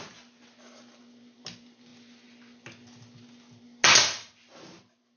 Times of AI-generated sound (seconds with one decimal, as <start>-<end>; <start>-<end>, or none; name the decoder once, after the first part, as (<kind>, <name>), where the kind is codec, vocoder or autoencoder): none